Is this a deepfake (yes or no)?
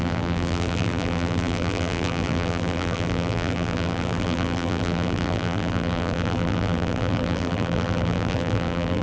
yes